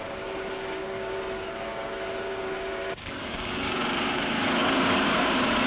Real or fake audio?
fake